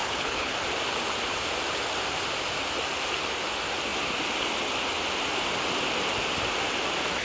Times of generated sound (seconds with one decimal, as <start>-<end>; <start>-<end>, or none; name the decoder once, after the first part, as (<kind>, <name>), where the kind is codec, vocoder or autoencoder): 0.0-0.5 (codec, HILCodec)